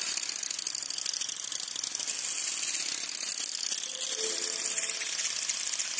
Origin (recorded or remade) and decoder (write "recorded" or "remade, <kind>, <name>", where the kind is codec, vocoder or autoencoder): recorded